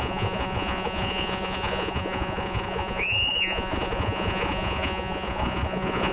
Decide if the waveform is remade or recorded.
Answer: remade